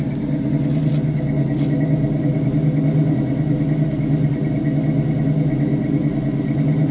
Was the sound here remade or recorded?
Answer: recorded